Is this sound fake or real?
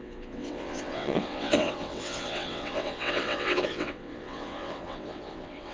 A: fake